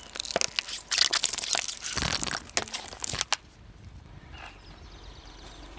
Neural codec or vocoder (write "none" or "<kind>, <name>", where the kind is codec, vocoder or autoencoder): none